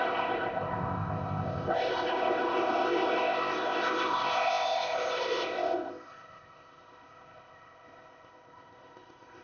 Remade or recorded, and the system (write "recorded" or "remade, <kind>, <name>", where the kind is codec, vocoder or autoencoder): remade, codec, ZipCodec